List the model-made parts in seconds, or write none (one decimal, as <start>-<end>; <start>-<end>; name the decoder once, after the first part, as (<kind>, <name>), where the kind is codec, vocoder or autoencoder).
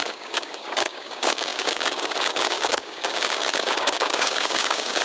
0.0-5.0 (codec, DAC)